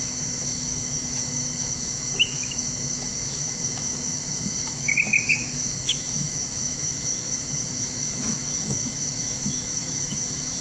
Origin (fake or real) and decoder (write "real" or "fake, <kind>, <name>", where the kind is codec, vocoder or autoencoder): fake, autoencoder, DAC-VAE